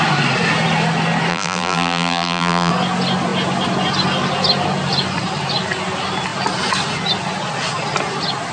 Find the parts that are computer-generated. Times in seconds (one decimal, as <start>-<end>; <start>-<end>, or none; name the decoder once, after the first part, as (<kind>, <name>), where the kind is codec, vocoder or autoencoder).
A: 1.3-2.7 (vocoder, BigVGAN v2)